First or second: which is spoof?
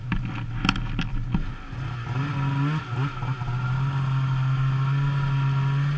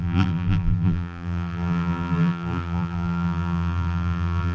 second